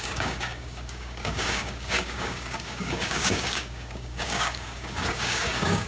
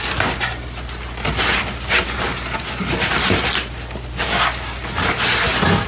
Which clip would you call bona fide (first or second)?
second